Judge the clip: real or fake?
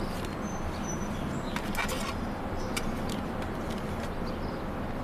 real